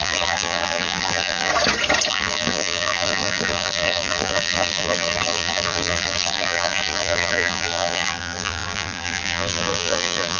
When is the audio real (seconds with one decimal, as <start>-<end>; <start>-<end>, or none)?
1.5-2.1